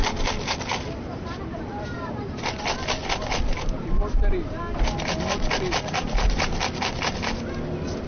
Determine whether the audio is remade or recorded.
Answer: recorded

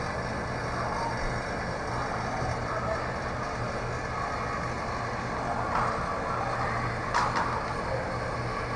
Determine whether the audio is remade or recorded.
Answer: recorded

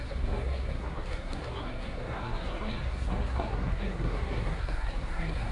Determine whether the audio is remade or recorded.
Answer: remade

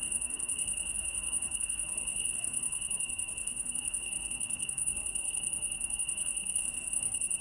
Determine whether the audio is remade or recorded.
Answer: remade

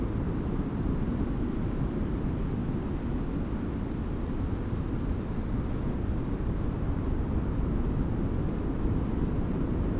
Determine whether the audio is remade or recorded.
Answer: recorded